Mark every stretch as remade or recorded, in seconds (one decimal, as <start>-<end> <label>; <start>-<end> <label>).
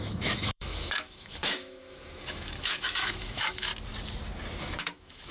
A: 0.0-3.7 remade; 3.7-4.6 recorded; 4.6-5.3 remade